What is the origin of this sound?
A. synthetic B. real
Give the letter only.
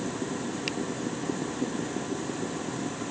B